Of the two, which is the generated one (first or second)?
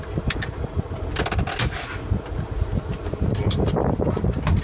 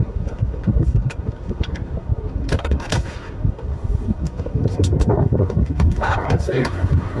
second